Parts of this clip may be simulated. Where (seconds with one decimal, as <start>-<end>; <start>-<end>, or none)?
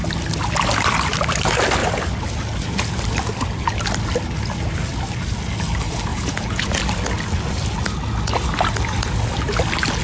6.1-6.7